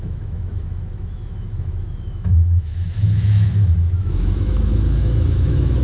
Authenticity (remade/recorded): remade